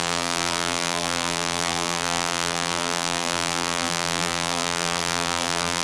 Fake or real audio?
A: fake